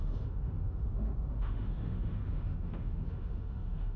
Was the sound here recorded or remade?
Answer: remade